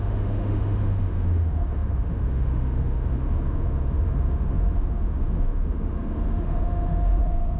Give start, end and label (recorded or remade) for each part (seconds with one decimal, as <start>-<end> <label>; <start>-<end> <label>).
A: 0.0-7.6 remade